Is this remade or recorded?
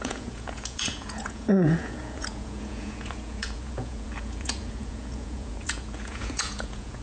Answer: remade